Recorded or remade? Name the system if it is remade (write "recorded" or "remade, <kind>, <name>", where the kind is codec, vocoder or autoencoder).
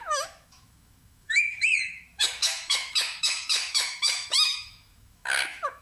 remade, autoencoder, DAC-VAE